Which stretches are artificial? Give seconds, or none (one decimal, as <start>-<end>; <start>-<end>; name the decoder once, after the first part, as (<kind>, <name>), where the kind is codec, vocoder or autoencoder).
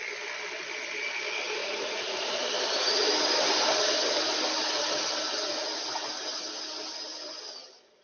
1.6-2.3 (vocoder, Vocos)